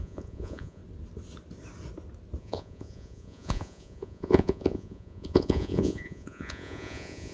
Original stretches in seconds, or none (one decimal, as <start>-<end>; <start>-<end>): 0.8-2.4

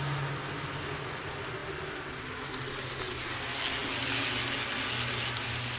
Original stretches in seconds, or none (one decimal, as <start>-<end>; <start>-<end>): 0.0-5.8